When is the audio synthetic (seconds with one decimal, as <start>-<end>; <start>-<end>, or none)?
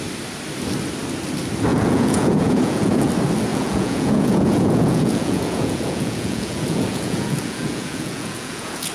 1.7-3.1; 3.5-8.9